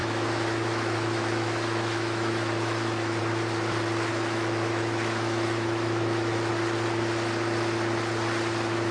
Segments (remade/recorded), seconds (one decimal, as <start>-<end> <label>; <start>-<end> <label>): 0.0-3.2 remade; 3.2-4.1 recorded; 4.1-6.5 remade; 6.5-8.9 recorded

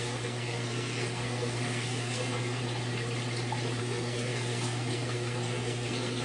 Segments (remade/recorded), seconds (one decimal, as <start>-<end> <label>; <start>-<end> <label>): 0.0-2.6 remade; 2.6-3.8 recorded; 3.8-6.2 remade

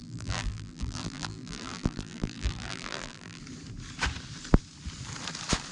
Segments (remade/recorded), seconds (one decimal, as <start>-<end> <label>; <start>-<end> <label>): 0.0-3.4 remade; 3.4-5.7 recorded

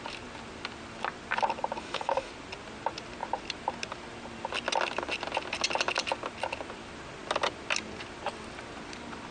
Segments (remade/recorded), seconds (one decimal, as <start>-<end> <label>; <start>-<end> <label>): 0.0-1.8 recorded; 1.8-2.3 remade; 2.3-9.3 recorded

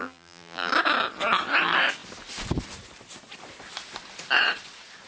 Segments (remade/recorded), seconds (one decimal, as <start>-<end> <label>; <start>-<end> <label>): 0.0-0.7 remade; 0.7-5.1 recorded